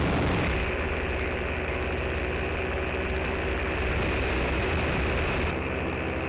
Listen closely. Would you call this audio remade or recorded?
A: recorded